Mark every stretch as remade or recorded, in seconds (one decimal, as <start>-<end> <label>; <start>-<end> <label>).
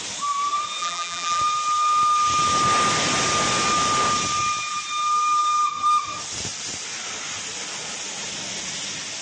0.0-0.8 recorded; 0.8-1.4 remade; 1.4-9.2 recorded